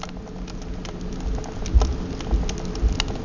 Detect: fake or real real